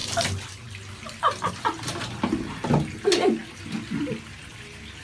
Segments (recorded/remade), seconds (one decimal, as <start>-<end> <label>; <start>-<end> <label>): 0.0-5.0 recorded